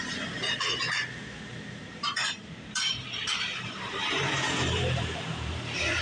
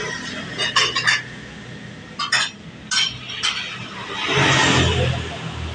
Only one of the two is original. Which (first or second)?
second